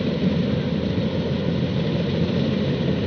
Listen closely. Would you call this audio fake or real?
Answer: fake